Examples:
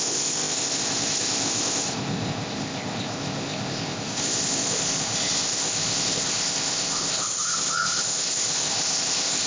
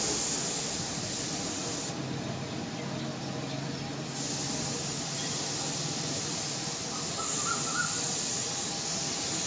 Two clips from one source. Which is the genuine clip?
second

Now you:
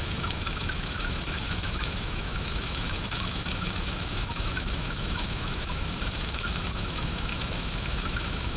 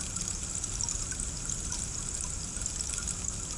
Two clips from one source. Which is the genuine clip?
second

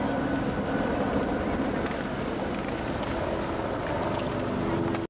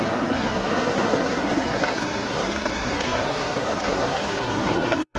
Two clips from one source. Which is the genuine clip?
first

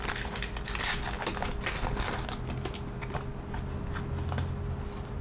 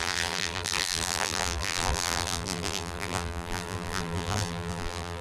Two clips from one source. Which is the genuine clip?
first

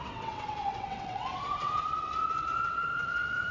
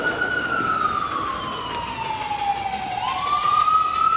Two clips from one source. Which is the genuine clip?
second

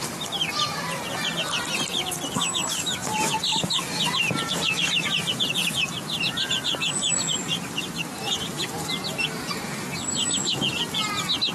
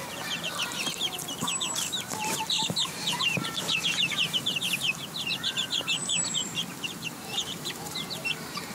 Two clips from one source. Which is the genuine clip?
first